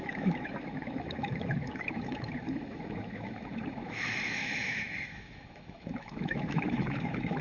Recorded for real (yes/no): no